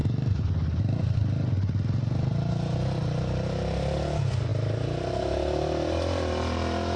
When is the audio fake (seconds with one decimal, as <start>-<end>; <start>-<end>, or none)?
none